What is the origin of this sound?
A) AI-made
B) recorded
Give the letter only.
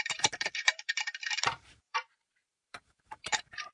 A